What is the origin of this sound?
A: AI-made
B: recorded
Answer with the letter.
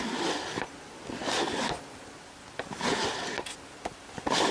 B